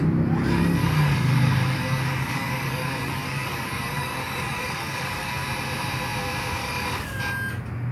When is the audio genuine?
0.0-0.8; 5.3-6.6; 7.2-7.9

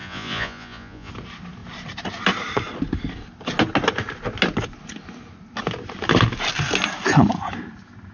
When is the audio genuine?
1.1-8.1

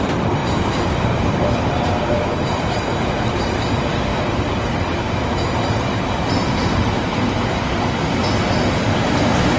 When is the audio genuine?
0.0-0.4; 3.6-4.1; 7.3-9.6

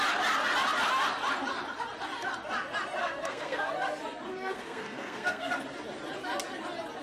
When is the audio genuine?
0.0-3.0; 3.7-4.3; 5.5-7.0

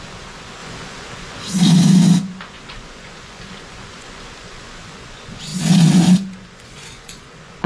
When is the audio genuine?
none

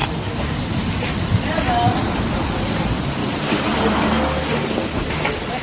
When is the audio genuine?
0.0-3.2; 4.1-5.6

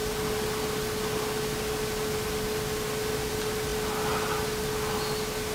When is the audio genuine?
0.0-5.5